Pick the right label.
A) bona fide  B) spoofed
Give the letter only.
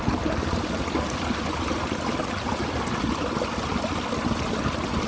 A